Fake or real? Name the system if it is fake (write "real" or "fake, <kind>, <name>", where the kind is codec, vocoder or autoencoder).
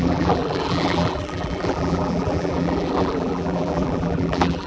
fake, vocoder, BigVGAN v2